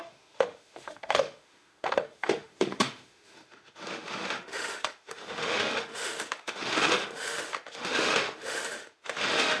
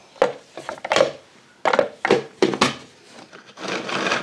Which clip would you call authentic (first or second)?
second